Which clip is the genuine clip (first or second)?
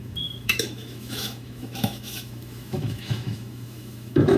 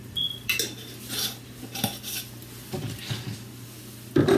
second